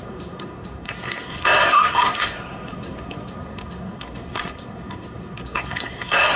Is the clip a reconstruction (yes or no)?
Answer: yes